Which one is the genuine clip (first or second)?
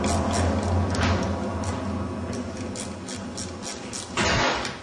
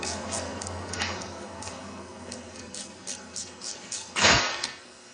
first